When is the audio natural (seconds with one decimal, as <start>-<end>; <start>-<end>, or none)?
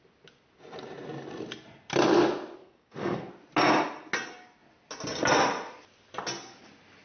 0.0-2.6; 3.3-7.0